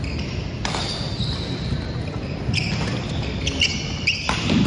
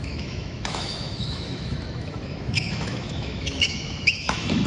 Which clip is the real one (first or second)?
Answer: first